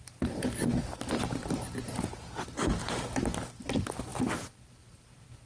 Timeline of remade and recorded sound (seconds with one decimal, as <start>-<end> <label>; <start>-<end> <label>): 0.0-5.5 recorded